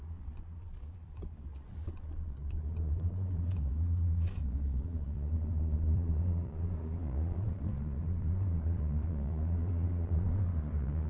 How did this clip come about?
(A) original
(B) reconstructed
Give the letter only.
B